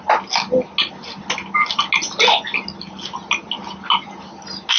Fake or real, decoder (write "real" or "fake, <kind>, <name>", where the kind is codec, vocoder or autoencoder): real